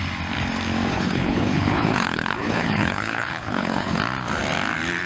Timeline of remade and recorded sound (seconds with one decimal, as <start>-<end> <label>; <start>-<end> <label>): 0.0-0.9 recorded; 0.9-4.0 remade; 4.0-5.1 recorded